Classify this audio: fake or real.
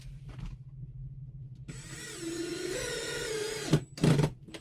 fake